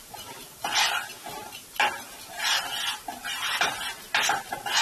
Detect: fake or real real